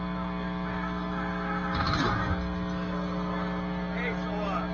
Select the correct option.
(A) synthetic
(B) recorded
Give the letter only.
B